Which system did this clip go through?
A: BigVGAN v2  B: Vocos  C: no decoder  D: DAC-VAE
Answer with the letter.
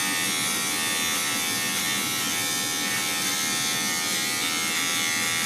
C